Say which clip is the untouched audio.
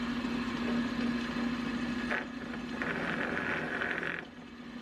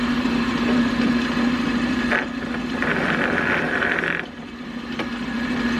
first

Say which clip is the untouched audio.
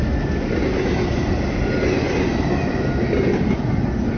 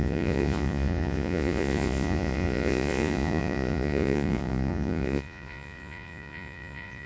first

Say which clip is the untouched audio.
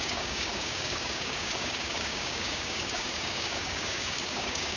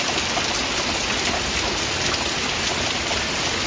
second